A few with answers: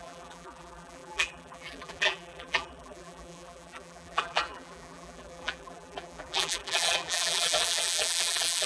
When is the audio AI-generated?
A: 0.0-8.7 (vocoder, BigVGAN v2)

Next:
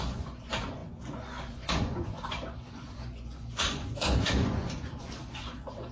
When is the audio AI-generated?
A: 0.0-5.9 (vocoder, Vocos)

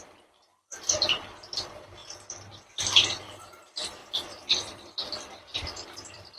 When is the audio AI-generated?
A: 0.0-4.0 (vocoder, BigVGAN v2); 4.9-6.4

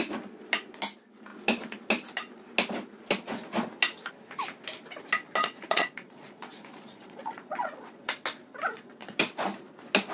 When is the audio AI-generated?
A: 5.4-8.1 (vocoder, Vocos); 8.7-9.2

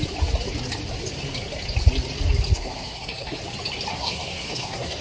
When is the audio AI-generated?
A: 2.5-3.4 (codec, SNAC); 3.9-5.0